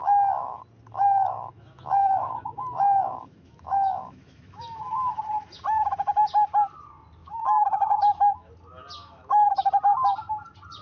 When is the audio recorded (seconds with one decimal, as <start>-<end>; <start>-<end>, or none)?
0.6-1.5; 5.2-7.2; 8.5-9.0; 9.7-10.8